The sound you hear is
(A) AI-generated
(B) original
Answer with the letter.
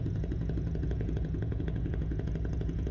A